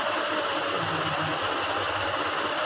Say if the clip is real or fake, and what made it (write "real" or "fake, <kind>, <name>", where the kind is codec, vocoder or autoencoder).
real